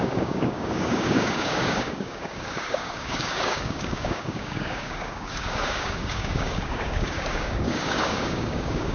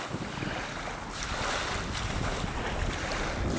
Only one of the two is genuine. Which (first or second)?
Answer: second